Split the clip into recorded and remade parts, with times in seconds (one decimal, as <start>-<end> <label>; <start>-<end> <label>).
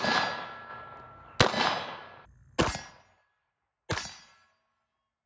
0.0-5.3 recorded